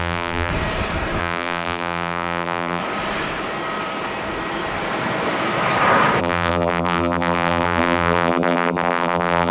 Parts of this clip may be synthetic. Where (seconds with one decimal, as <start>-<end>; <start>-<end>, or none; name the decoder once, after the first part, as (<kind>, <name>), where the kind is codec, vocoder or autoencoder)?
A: 0.0-0.5 (vocoder, BigVGAN v2); 1.2-2.8; 6.2-9.5